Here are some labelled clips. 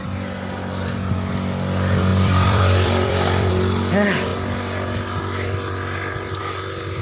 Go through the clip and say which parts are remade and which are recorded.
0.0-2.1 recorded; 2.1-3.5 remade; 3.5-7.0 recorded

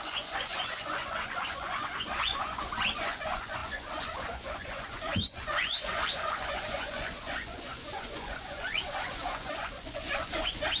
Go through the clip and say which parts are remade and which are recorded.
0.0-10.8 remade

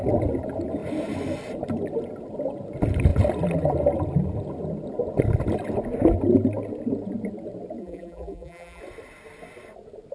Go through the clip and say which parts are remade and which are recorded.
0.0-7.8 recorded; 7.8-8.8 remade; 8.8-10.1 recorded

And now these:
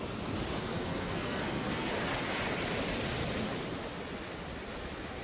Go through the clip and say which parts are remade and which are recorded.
0.0-0.7 recorded; 0.7-1.9 remade; 1.9-5.2 recorded

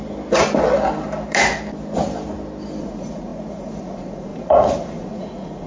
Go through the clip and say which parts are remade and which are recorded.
0.0-2.8 recorded; 2.8-5.7 remade